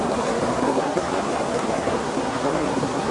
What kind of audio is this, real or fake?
fake